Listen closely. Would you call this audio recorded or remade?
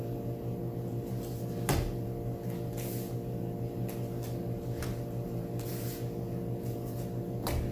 recorded